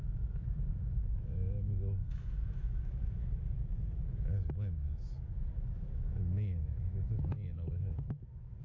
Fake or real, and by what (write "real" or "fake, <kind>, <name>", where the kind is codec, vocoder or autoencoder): fake, autoencoder, DAC-VAE